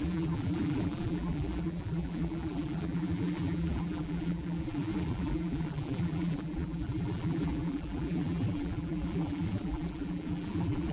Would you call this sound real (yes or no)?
no